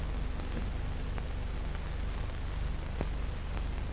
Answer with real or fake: real